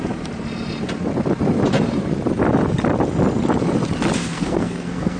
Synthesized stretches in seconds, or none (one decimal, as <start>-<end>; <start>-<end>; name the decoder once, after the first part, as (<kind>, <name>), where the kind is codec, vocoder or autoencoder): 4.2-5.2 (codec, SNAC)